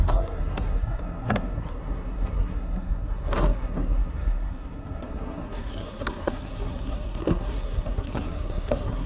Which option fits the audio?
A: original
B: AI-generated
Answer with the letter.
B